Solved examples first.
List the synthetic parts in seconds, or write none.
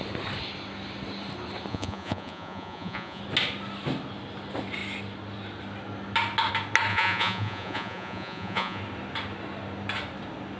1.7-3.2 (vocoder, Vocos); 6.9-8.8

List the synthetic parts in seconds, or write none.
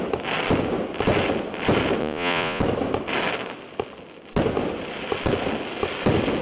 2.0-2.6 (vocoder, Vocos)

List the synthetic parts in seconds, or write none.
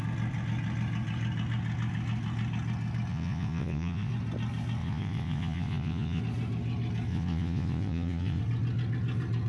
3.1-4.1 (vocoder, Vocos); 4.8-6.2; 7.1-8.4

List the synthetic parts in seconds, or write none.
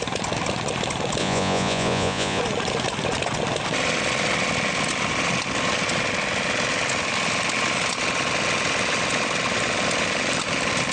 1.2-2.4 (vocoder, Vocos)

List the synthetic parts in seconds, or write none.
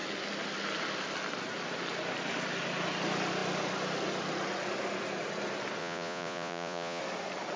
5.8-7.0 (vocoder, Vocos)